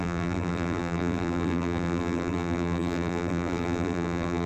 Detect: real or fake fake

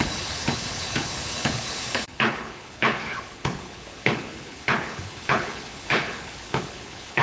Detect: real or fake fake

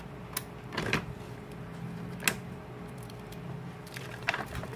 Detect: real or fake real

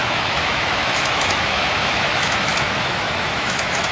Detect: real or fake fake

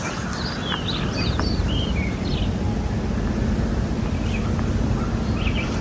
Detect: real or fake real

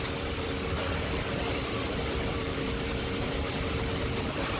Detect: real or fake fake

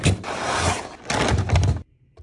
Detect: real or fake real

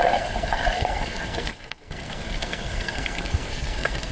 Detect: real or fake fake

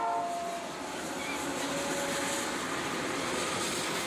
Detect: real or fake real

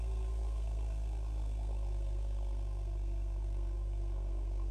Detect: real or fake fake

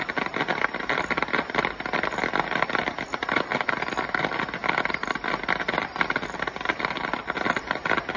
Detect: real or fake real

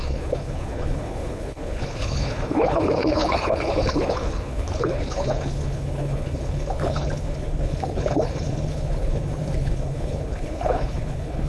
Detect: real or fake fake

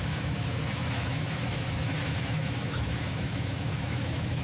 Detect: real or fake fake